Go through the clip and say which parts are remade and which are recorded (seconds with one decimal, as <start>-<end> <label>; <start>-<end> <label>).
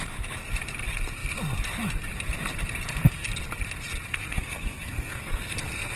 0.0-4.1 recorded; 4.1-6.0 remade